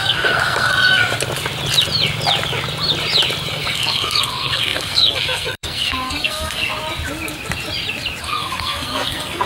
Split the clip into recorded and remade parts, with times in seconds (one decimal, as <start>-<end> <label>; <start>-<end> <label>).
0.0-1.0 remade; 1.0-3.5 recorded; 3.5-6.7 remade; 6.7-8.2 recorded; 8.2-9.5 remade